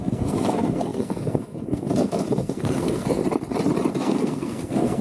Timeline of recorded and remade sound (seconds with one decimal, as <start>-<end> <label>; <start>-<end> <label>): 0.0-3.2 remade; 3.2-3.9 recorded; 3.9-5.0 remade